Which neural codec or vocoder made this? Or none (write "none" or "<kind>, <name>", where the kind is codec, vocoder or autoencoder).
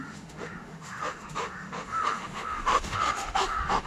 autoencoder, DAC-VAE